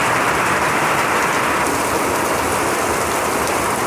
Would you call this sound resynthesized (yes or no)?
no